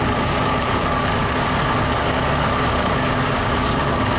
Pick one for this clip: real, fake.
fake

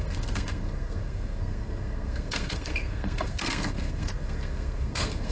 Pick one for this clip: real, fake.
fake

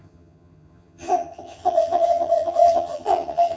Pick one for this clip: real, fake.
fake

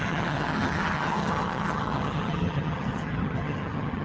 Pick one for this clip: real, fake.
fake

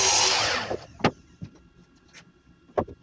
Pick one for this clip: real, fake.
real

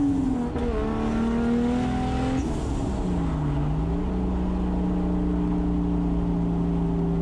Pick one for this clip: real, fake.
real